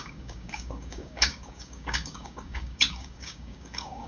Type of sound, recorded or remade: remade